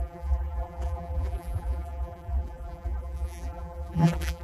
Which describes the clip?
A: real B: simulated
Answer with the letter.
B